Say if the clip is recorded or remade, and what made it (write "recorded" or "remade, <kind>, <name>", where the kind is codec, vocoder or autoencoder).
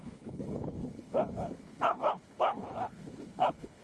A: remade, codec, HILCodec